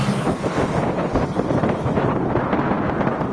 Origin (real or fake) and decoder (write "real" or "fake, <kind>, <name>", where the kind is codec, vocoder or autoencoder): real